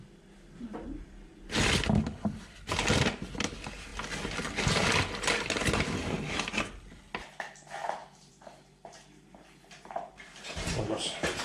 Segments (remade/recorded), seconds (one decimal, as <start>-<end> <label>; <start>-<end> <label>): 0.0-8.0 recorded; 8.0-11.4 remade